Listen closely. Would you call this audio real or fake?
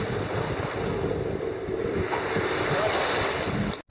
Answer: real